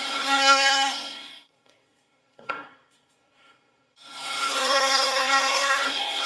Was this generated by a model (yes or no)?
yes